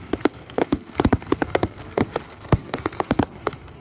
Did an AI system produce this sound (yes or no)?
yes